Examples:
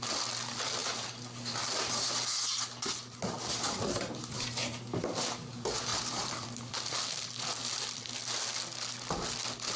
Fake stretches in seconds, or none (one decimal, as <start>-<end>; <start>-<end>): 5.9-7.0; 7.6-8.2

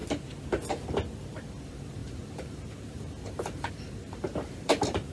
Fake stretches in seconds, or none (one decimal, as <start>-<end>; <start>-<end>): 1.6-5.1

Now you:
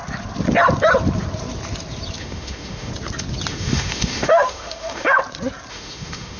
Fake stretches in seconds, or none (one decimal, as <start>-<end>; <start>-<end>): 2.2-2.9; 3.5-5.2; 5.7-6.4

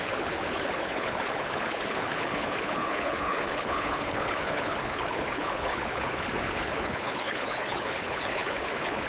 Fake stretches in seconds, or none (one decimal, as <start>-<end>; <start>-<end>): 0.0-9.1

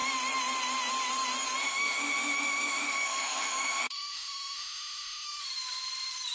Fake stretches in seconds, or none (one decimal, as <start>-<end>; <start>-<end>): 1.6-5.4

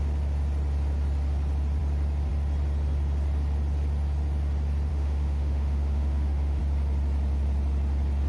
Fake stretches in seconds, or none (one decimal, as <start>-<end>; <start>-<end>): 4.9-6.6